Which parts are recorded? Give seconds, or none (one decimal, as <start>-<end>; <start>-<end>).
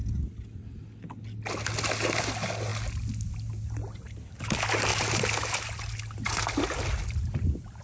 0.0-7.8